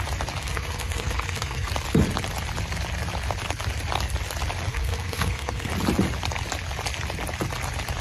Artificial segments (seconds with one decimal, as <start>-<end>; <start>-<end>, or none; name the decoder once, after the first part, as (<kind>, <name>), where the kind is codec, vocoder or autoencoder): 0.4-1.7 (codec, SNAC); 4.7-5.7